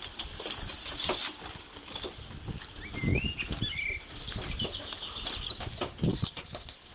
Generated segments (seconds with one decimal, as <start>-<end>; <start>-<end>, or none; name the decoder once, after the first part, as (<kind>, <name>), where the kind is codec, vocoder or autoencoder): 6.1-6.9 (codec, SNAC)